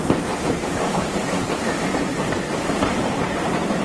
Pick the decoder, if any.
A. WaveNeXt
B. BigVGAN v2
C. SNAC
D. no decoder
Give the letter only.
B